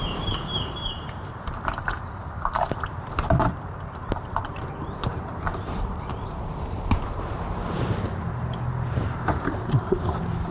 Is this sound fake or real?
fake